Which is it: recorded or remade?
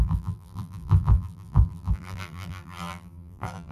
remade